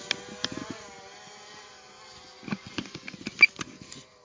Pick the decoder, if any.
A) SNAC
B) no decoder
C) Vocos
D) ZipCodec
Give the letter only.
B